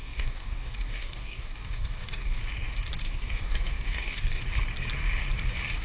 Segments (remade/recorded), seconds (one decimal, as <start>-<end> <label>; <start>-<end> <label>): 0.0-2.4 remade; 2.4-3.0 recorded; 3.0-4.4 remade; 4.4-5.8 recorded